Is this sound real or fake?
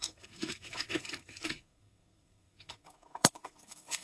fake